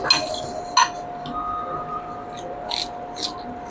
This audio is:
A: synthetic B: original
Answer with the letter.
B